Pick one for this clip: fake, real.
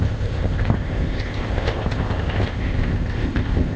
fake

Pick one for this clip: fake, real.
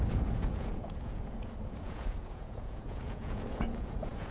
fake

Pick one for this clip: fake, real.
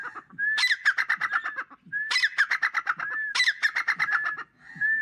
real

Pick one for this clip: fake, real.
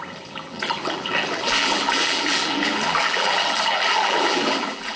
fake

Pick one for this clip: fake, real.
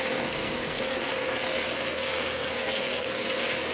fake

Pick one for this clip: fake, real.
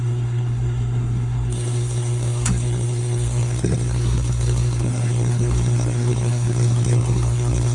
fake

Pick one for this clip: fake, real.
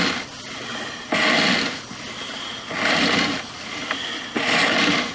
real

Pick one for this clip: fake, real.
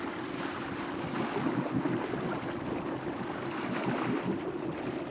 real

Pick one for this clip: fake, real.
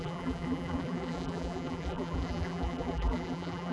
fake